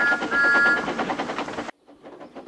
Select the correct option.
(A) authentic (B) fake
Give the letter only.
A